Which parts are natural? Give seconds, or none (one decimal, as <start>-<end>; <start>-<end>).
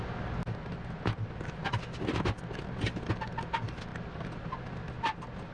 0.0-3.9; 4.7-5.5